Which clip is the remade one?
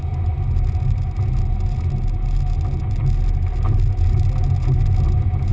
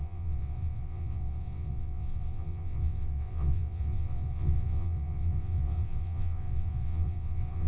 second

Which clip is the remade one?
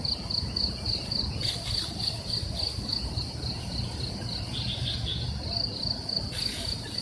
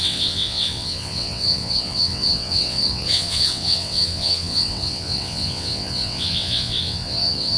second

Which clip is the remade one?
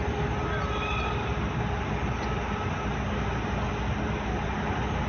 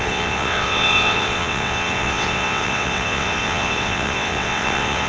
second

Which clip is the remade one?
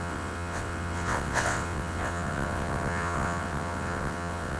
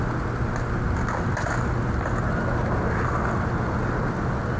first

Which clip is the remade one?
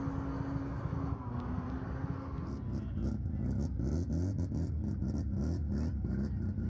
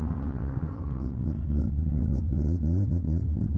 second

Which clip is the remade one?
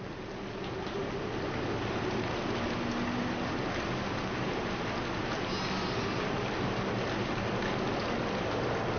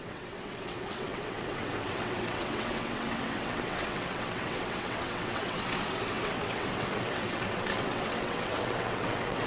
second